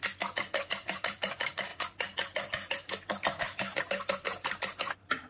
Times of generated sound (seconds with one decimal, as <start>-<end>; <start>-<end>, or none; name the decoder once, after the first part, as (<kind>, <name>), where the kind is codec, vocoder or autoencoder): 0.7-1.7 (vocoder, BigVGAN v2); 3.8-5.3